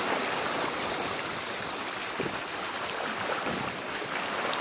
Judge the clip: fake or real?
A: real